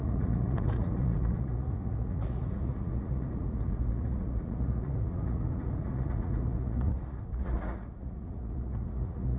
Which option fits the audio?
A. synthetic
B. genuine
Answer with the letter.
A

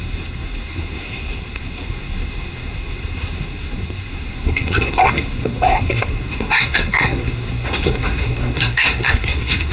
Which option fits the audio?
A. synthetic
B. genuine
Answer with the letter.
A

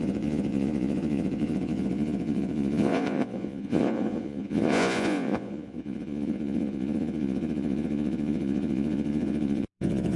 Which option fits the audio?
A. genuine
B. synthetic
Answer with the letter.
B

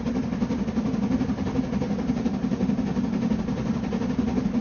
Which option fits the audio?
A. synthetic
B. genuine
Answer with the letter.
B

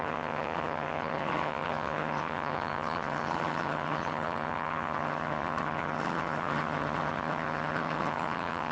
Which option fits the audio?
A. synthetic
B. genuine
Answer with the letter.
A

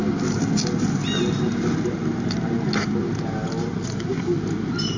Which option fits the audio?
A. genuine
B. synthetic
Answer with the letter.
A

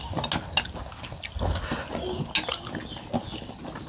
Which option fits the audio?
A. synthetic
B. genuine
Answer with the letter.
B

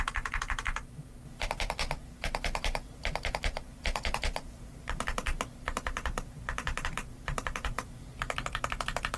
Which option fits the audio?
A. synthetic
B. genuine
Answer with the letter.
A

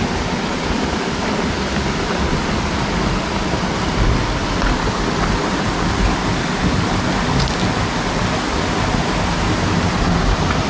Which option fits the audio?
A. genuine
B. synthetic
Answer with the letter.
A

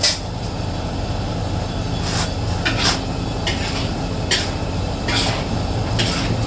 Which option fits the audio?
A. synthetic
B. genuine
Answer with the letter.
B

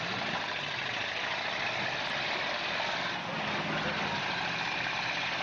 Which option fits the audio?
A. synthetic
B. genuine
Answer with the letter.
B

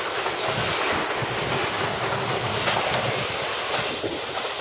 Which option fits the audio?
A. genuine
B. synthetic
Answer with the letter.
A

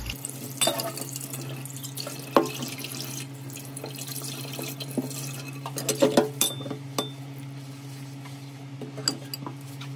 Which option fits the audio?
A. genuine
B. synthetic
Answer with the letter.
A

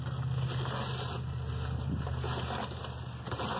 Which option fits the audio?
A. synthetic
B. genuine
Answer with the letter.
B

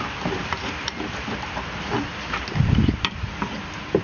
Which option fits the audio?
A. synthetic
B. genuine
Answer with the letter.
A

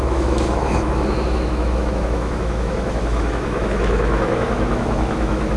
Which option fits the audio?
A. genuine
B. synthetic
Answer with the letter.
B